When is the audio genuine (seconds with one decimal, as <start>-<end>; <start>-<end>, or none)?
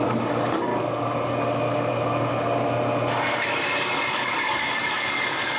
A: 0.7-4.1